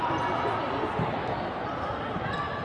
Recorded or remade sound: recorded